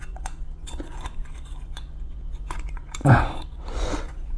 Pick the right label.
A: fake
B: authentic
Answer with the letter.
A